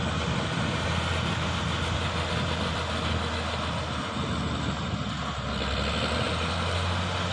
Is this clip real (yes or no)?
yes